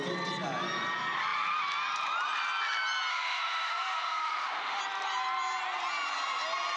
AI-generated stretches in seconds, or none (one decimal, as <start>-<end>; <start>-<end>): 3.1-4.8